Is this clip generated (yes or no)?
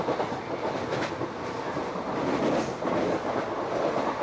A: no